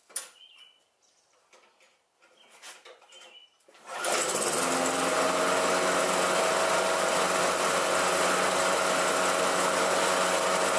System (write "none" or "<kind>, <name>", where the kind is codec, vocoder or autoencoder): none